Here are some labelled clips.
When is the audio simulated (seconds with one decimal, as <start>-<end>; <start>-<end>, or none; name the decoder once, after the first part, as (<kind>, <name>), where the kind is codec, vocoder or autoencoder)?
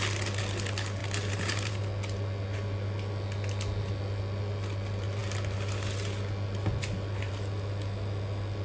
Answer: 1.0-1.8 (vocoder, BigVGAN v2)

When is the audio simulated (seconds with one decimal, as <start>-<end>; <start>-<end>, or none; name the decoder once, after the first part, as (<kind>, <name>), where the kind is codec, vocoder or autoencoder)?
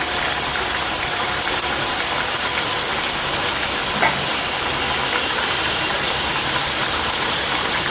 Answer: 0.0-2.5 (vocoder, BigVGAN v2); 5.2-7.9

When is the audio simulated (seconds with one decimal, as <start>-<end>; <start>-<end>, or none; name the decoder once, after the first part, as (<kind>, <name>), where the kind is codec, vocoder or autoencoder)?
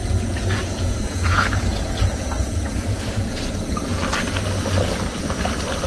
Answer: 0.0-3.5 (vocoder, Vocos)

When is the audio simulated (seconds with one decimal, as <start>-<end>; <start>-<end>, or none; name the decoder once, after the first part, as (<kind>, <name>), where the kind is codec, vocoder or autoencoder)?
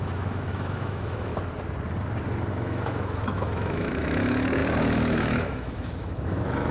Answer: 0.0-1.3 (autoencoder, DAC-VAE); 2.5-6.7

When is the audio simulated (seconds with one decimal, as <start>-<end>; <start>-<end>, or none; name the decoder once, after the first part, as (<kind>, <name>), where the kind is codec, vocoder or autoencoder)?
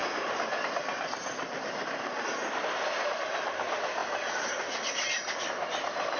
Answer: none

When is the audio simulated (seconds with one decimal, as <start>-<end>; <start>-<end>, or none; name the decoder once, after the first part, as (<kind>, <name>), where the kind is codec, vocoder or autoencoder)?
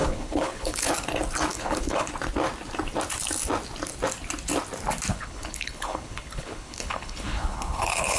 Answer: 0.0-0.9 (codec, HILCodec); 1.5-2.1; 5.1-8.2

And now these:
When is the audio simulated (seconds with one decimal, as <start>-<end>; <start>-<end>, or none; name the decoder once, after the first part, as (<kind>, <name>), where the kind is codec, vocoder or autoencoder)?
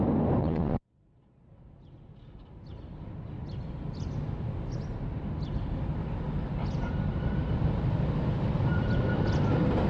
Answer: 0.4-1.4 (vocoder, Vocos)